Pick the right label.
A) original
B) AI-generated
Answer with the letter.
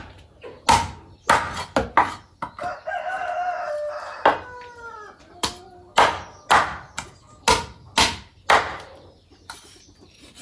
A